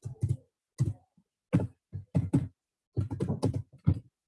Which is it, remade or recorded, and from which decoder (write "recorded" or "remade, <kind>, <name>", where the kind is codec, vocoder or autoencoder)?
recorded